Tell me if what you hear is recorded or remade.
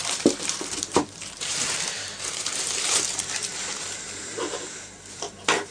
remade